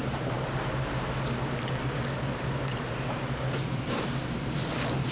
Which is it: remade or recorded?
recorded